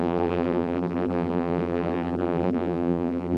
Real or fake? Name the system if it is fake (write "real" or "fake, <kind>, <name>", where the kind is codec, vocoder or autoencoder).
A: fake, vocoder, BigVGAN v2